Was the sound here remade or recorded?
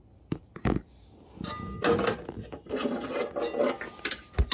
recorded